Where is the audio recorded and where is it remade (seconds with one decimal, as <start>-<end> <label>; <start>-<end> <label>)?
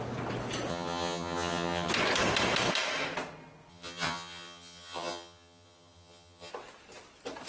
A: 0.0-0.7 recorded; 0.7-1.9 remade; 1.9-3.7 recorded; 3.7-6.5 remade; 6.5-7.5 recorded